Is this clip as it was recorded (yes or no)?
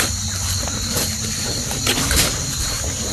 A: yes